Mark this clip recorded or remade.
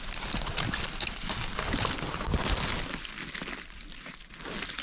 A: recorded